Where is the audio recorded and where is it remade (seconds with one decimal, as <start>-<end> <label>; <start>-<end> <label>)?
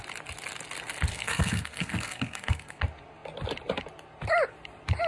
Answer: 0.0-1.1 recorded; 1.1-2.8 remade; 2.8-5.1 recorded